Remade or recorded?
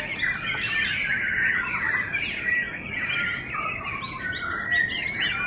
recorded